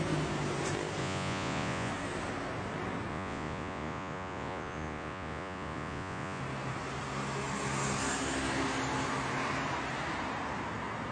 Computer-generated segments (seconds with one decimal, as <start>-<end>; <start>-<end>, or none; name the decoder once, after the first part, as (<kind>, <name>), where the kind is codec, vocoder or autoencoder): 1.0-1.9 (vocoder, Vocos); 3.1-6.4